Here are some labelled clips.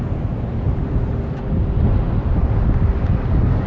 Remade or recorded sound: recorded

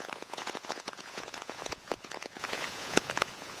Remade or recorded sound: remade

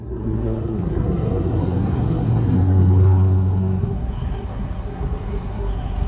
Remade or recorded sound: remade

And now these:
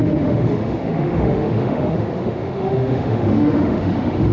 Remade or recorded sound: remade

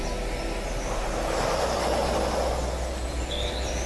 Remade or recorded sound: recorded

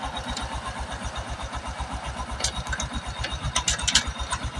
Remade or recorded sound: recorded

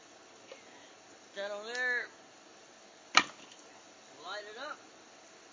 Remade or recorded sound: recorded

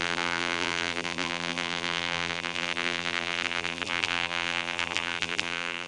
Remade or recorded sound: remade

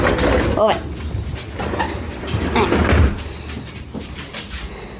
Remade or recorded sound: recorded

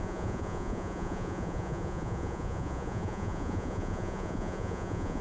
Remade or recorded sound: remade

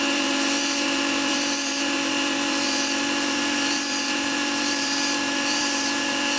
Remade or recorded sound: remade